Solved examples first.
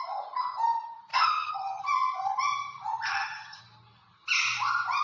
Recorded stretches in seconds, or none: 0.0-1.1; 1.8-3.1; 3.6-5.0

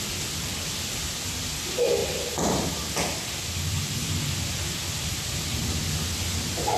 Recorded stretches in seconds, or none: 0.0-6.8

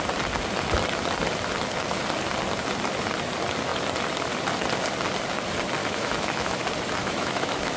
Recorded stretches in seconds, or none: 0.0-5.8; 6.6-7.0